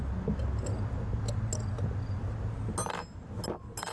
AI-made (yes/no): no